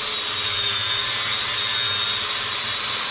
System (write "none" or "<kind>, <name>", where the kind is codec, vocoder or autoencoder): none